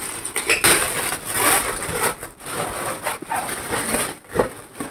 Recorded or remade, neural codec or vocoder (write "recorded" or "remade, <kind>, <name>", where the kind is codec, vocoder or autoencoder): recorded